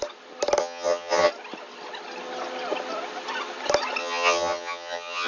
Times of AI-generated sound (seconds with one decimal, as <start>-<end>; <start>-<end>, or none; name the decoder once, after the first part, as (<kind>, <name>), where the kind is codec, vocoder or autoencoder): 0.6-1.3 (vocoder, HiFi-GAN); 4.0-5.3